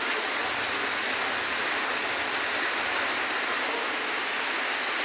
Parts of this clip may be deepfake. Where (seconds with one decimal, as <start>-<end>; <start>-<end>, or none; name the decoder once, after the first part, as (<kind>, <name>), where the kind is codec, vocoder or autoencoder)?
none